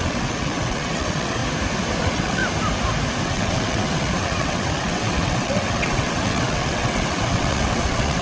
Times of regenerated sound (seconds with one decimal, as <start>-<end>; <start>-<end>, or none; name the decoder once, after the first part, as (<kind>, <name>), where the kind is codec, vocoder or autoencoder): 0.0-1.4 (vocoder, WaveNeXt); 2.0-2.4; 3.2-8.2